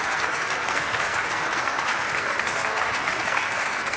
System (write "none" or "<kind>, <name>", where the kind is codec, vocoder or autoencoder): codec, SNAC